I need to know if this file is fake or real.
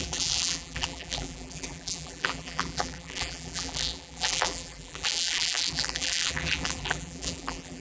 fake